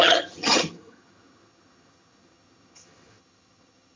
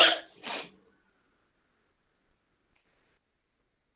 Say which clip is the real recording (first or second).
second